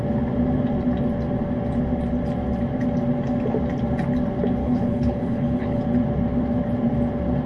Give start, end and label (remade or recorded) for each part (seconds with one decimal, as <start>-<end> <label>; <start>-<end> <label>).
0.0-4.6 recorded; 4.6-5.8 remade; 5.8-7.5 recorded